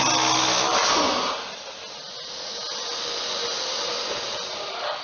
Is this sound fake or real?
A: real